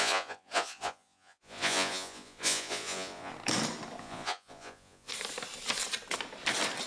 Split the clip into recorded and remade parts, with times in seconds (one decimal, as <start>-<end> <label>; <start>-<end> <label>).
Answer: 0.0-3.3 remade; 3.3-4.0 recorded; 4.0-5.1 remade; 5.1-6.9 recorded